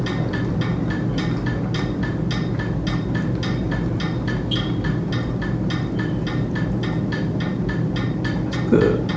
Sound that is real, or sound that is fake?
real